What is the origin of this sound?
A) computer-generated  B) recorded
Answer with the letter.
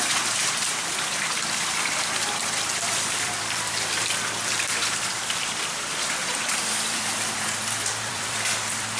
A